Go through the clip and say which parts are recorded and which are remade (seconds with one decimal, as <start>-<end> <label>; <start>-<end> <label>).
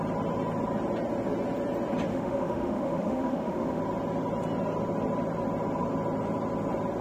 0.0-2.1 recorded; 2.1-3.8 remade; 3.8-7.0 recorded